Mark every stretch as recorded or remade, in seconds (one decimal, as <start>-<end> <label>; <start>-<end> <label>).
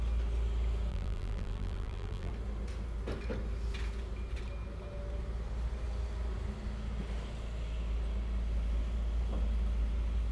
0.0-0.9 recorded; 0.9-2.3 remade; 2.3-10.3 recorded